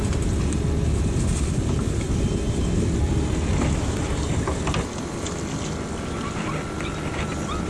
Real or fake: real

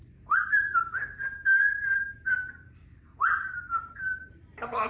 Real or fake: fake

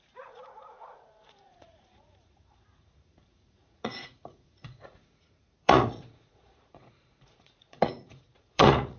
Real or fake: fake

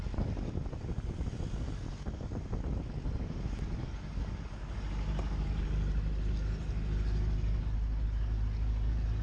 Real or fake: real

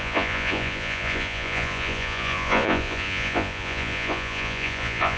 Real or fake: fake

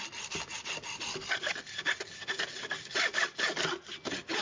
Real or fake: real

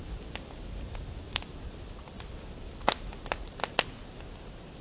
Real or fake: real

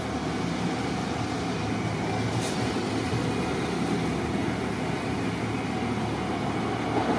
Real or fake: real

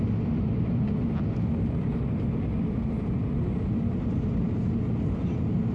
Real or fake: real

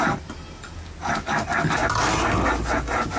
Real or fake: real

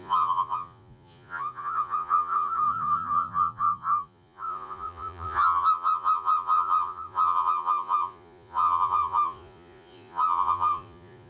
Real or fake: fake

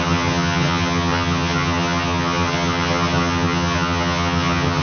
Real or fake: fake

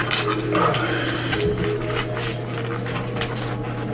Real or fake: real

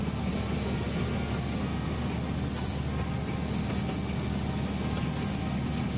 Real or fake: real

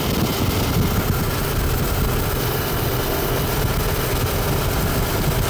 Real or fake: real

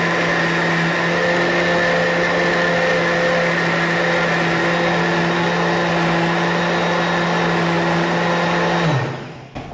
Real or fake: real